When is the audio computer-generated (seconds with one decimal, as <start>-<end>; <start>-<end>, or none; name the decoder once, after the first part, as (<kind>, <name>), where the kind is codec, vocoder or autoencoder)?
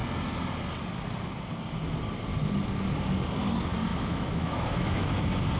3.9-5.1 (autoencoder, DAC-VAE)